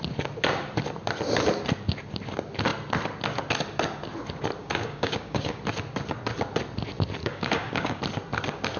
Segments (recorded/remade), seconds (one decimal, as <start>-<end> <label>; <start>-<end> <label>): 0.0-4.6 recorded; 4.6-5.6 remade; 5.6-7.2 recorded; 7.2-8.0 remade; 8.0-8.8 recorded

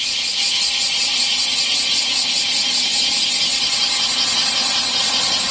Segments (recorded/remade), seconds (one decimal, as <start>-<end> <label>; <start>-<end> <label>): 0.0-5.5 recorded

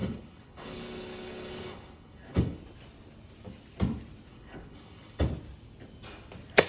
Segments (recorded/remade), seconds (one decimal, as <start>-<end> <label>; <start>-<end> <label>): 0.0-2.6 remade; 2.6-4.3 recorded; 4.3-5.3 remade; 5.3-6.7 recorded

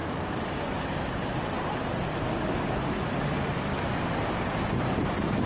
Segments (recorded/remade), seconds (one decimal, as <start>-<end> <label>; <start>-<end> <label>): 0.0-5.5 recorded

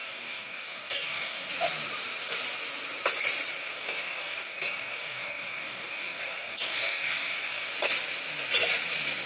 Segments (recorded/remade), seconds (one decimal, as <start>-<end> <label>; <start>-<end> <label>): 0.0-1.5 remade; 1.5-3.6 recorded; 3.6-7.7 remade; 7.7-9.3 recorded

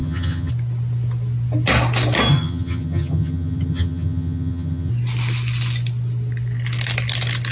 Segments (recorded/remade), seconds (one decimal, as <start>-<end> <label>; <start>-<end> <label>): 0.0-0.5 remade; 0.5-2.3 recorded; 2.3-4.9 remade; 4.9-7.5 recorded